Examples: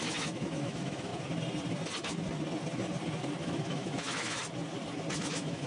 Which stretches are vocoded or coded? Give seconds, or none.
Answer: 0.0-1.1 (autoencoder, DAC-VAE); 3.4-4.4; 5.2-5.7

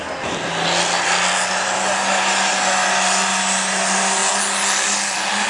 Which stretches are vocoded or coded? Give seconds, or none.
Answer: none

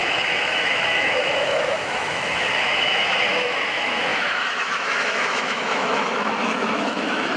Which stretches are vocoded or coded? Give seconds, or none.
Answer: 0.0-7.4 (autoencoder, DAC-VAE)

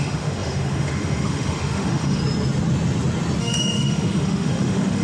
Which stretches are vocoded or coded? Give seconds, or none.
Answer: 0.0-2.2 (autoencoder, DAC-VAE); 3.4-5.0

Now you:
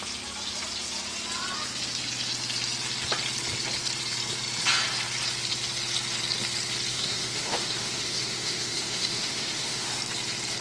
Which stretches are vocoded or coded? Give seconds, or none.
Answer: 6.9-10.0 (autoencoder, DAC-VAE)